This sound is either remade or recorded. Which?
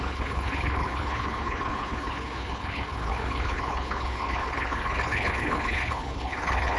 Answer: remade